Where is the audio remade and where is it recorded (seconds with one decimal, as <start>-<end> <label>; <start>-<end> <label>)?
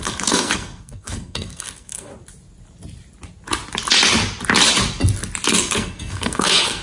0.0-2.1 remade; 2.1-5.5 recorded; 5.5-6.8 remade